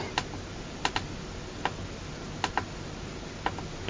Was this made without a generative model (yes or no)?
yes